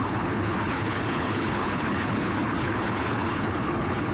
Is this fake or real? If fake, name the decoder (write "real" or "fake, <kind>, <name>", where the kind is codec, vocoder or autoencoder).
fake, codec, HILCodec